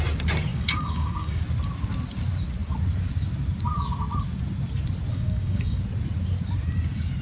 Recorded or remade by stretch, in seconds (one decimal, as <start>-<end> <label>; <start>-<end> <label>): 0.0-0.5 recorded; 0.5-1.4 remade; 1.4-5.1 recorded; 5.1-5.8 remade; 5.8-7.2 recorded